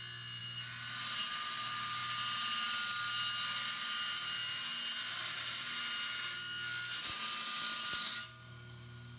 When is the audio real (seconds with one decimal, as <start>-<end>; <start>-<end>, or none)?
0.0-9.2